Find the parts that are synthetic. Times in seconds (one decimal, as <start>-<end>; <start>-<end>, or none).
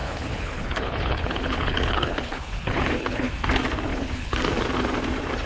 0.0-3.3; 3.9-4.4